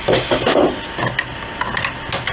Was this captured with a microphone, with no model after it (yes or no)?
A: yes